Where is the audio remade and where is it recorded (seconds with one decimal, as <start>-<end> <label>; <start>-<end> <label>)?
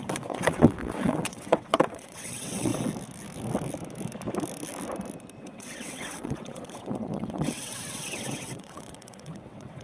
0.0-2.7 remade; 2.7-5.4 recorded; 5.4-9.8 remade